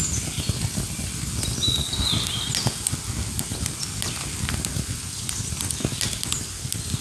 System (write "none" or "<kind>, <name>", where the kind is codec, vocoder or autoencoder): none